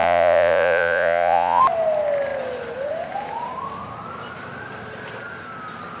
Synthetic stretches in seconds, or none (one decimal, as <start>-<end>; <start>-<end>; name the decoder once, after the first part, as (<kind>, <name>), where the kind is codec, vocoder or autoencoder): 0.0-1.6 (vocoder, Vocos)